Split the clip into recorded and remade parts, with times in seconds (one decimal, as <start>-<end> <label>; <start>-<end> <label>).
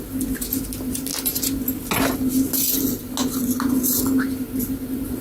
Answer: 0.0-5.2 recorded